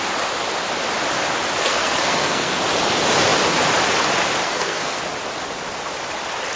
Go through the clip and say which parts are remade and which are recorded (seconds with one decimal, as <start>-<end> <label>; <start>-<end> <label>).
0.0-1.6 recorded; 1.6-2.6 remade; 2.6-4.4 recorded; 4.4-5.0 remade; 5.0-6.6 recorded